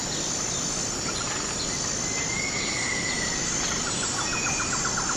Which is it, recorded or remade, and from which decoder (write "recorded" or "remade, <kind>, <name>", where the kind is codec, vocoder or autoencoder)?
recorded